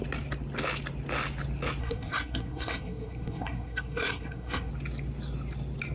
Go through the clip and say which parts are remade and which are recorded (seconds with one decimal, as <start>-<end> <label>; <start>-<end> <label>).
0.0-1.8 recorded; 1.8-4.7 remade; 4.7-5.9 recorded